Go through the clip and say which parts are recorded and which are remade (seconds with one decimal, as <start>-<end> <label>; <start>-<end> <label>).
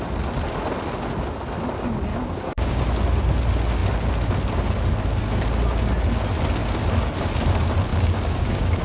0.0-2.1 recorded; 2.1-2.8 remade; 2.8-7.9 recorded; 7.9-8.8 remade